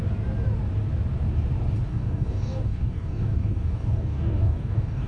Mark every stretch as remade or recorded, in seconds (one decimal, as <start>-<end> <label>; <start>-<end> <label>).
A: 0.0-1.9 recorded; 1.9-5.1 remade